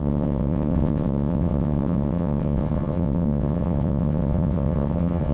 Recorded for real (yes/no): no